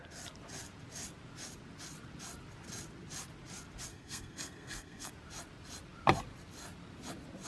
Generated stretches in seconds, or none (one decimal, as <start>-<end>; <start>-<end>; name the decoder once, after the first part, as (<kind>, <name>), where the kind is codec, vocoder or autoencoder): 3.9-5.1 (codec, SNAC)